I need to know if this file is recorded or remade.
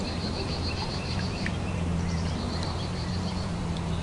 remade